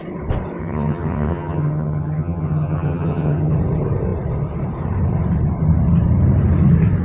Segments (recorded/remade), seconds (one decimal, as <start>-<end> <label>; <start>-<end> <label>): 0.0-0.6 recorded; 0.6-3.5 remade; 3.5-7.0 recorded